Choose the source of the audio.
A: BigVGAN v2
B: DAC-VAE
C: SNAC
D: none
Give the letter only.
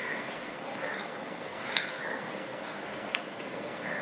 C